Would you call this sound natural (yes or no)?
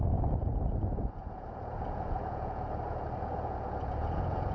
no